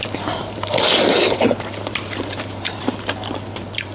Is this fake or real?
fake